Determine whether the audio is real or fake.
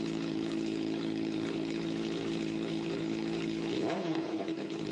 fake